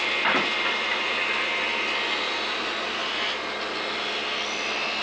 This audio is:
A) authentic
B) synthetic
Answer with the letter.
A